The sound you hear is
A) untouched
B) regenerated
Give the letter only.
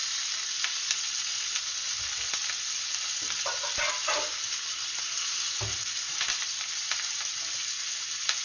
A